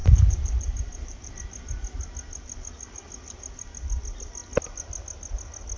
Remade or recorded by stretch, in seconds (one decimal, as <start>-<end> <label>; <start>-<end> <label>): 0.0-1.3 remade; 1.3-5.8 recorded